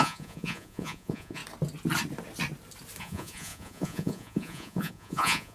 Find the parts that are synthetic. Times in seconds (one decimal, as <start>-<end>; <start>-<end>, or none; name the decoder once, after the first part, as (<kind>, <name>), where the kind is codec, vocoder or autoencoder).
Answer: 0.0-1.4 (vocoder, Vocos); 3.0-5.5